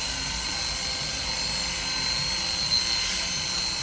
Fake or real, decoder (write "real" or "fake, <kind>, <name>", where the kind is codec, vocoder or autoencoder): real